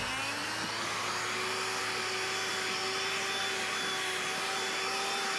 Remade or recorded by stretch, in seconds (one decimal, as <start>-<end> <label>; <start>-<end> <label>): 0.0-5.4 recorded